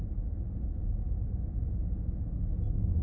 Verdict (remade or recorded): recorded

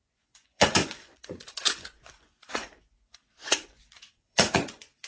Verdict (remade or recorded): remade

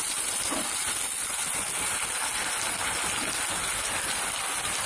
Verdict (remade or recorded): recorded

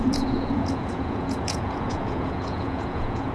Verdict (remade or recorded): remade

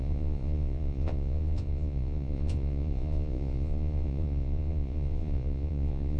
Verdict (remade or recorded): remade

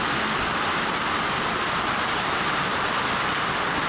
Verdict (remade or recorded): recorded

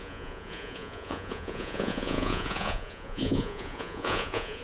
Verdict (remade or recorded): remade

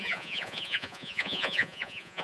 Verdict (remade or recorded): remade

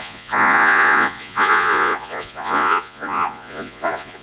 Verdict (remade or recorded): remade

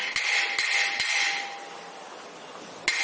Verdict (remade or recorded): recorded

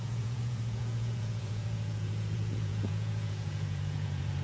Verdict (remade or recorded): remade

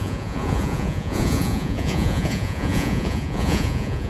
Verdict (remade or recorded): remade